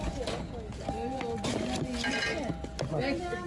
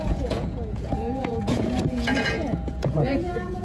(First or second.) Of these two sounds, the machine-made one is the second